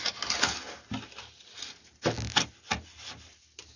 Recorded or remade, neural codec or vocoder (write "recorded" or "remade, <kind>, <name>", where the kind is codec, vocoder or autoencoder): recorded